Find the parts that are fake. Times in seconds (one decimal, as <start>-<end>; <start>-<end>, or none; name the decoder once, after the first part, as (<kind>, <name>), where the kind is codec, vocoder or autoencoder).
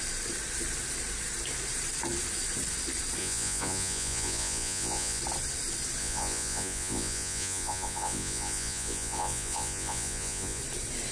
3.2-5.2 (vocoder, Vocos); 6.0-10.6